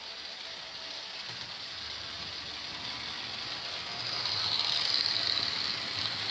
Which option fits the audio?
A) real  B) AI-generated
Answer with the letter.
A